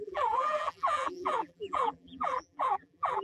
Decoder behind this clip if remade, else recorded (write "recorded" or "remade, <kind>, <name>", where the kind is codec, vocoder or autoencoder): remade, vocoder, BigVGAN v2